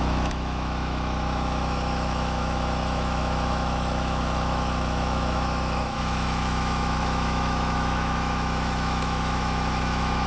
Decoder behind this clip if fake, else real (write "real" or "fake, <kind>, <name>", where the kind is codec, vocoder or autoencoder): fake, autoencoder, DAC-VAE